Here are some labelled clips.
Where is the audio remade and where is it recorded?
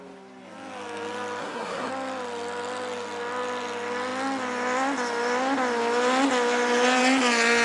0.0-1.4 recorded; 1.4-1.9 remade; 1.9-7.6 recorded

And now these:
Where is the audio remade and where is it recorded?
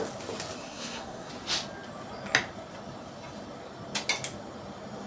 0.0-0.6 recorded; 0.6-1.3 remade; 1.3-5.1 recorded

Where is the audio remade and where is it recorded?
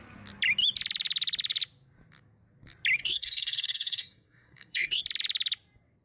0.0-3.0 recorded; 3.0-5.0 remade; 5.0-6.0 recorded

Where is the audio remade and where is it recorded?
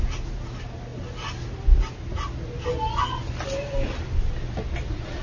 0.0-5.2 recorded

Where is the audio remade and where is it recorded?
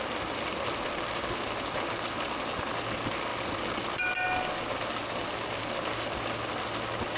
0.0-7.2 recorded